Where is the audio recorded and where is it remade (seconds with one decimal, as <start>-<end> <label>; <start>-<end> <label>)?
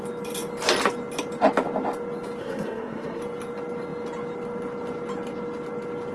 0.0-2.4 recorded; 2.4-3.2 remade; 3.2-6.1 recorded